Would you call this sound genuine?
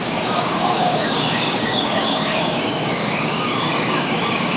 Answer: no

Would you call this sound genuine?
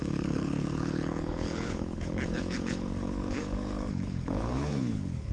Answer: no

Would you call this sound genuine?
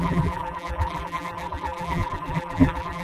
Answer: no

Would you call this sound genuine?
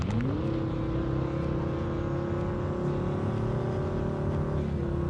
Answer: yes